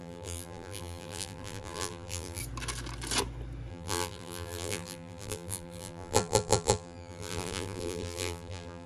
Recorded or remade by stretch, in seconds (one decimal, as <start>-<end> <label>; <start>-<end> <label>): 0.0-2.4 remade; 2.4-3.7 recorded; 3.7-8.9 remade